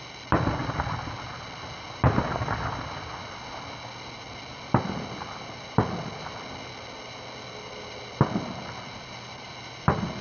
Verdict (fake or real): real